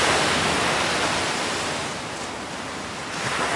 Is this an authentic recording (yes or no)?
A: yes